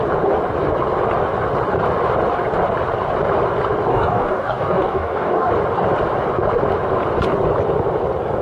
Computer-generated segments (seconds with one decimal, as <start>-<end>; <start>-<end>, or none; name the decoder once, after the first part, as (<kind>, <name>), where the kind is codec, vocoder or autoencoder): 3.9-5.5 (codec, DAC)